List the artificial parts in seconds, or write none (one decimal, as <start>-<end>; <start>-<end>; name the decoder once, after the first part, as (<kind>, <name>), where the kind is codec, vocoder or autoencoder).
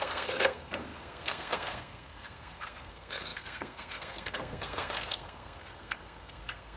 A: 0.0-6.8 (codec, SNAC)